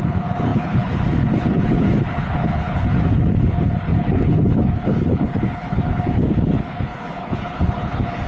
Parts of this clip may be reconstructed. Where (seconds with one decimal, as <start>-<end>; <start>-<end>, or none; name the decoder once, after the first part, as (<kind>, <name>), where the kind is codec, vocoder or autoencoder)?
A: 0.0-8.3 (codec, HILCodec)